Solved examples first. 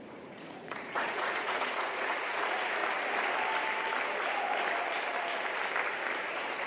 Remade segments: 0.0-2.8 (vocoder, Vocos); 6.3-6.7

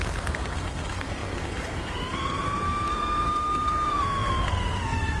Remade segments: 0.0-5.2 (codec, SNAC)

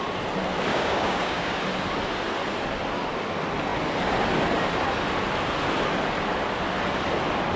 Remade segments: 0.7-1.6 (codec, DAC)

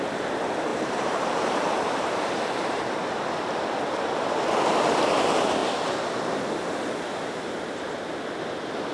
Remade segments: 0.7-3.0 (vocoder, BigVGAN v2)

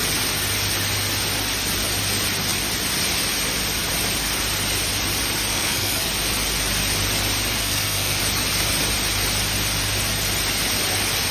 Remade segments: 5.5-6.1 (codec, SNAC); 7.6-8.2

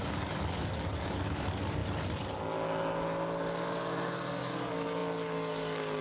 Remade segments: 0.0-1.8 (codec, DAC); 4.4-6.0

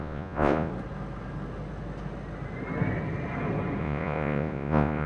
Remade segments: 0.0-0.7 (vocoder, Vocos); 3.8-5.1